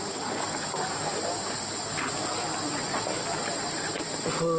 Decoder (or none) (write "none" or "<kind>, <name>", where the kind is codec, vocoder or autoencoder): none